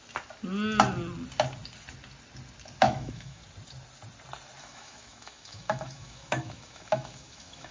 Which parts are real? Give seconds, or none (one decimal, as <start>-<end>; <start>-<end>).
0.0-2.8; 3.4-4.6